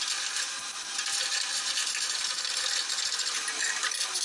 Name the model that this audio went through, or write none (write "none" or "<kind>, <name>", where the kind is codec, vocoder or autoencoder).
none